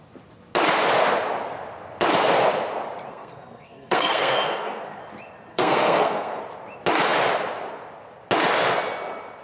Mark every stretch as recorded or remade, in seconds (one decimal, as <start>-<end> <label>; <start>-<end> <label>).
0.0-3.1 recorded; 3.1-5.0 remade; 5.0-5.5 recorded; 5.5-6.4 remade; 6.4-9.4 recorded

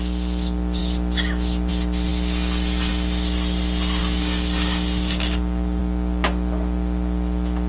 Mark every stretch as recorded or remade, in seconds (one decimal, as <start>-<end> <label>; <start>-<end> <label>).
0.0-4.0 recorded; 4.0-5.8 remade; 5.8-7.7 recorded

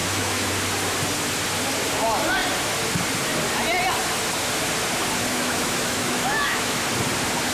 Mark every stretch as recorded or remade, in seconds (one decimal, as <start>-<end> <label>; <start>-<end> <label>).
0.0-0.5 remade; 0.5-5.3 recorded; 5.3-6.8 remade; 6.8-7.5 recorded

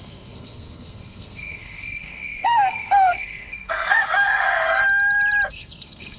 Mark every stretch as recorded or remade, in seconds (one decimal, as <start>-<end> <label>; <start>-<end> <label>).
0.0-4.8 remade; 4.8-5.5 recorded; 5.5-6.2 remade

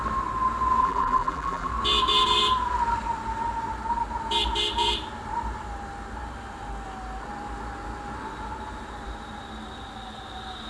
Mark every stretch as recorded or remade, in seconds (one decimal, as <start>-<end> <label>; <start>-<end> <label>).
0.0-0.8 recorded; 0.8-1.7 remade; 1.7-10.7 recorded

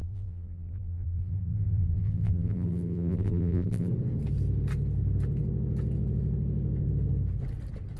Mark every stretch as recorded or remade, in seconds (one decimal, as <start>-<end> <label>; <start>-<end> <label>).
0.0-3.9 remade; 3.9-8.0 recorded

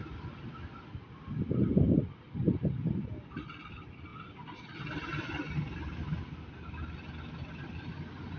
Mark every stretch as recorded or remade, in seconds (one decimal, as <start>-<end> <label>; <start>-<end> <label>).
0.0-8.4 recorded

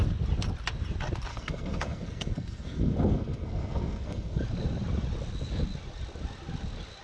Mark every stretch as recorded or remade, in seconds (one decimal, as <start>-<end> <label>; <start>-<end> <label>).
0.0-1.3 recorded; 1.3-4.4 remade; 4.4-7.0 recorded